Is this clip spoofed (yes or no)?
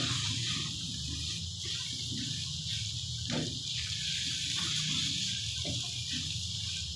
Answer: no